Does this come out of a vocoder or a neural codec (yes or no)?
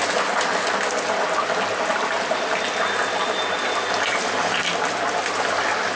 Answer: no